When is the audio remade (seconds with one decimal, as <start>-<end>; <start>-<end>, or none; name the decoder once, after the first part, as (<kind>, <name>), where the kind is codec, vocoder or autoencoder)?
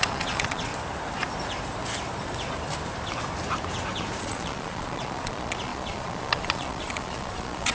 0.0-0.7 (vocoder, Vocos); 4.2-7.7